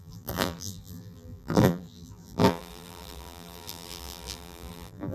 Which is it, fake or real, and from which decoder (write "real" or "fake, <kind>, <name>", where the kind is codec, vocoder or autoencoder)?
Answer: fake, vocoder, BigVGAN v2